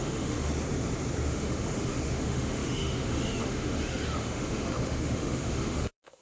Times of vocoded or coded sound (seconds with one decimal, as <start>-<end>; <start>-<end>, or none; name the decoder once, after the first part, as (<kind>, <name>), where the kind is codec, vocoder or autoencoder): 0.0-0.5 (autoencoder, DAC-VAE); 1.3-6.2